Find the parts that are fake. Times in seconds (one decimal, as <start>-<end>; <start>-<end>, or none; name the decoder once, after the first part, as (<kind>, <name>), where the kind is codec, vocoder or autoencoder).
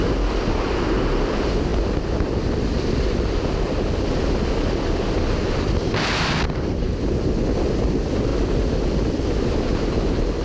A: none